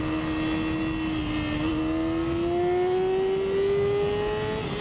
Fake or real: real